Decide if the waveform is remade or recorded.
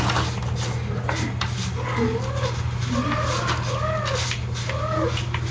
recorded